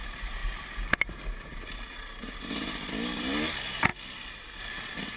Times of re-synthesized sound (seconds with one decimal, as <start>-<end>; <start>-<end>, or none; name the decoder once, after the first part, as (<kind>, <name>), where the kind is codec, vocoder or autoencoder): none

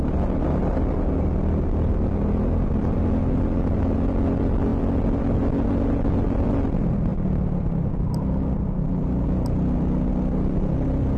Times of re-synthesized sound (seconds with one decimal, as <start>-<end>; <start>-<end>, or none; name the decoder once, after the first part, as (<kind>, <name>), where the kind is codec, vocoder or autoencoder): none

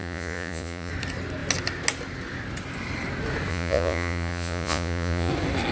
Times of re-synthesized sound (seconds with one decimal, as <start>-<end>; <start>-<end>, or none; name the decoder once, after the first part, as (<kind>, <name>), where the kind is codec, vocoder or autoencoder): 0.0-0.9 (vocoder, Vocos); 3.5-5.3